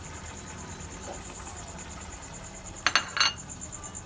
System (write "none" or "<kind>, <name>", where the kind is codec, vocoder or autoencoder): none